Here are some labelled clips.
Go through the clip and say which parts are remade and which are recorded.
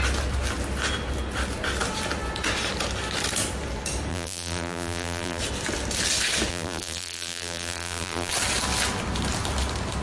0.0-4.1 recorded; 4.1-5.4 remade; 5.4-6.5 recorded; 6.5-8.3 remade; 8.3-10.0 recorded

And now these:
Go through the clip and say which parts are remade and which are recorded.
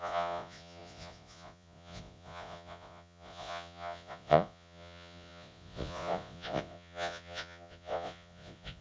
0.0-8.8 remade